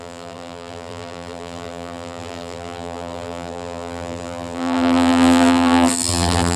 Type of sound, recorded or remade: remade